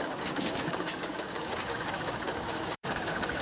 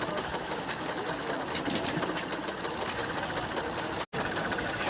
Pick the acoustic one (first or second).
second